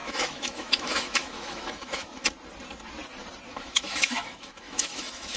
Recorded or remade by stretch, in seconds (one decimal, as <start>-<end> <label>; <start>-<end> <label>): 0.0-2.3 remade; 2.3-3.5 recorded; 3.5-5.4 remade